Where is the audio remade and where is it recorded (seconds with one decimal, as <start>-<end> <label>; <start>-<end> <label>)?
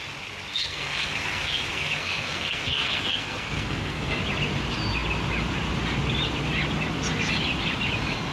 0.0-0.5 recorded; 0.5-4.2 remade; 4.2-8.3 recorded